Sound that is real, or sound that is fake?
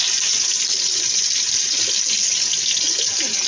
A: real